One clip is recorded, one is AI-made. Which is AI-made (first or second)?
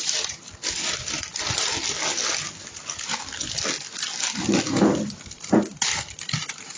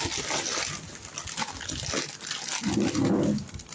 first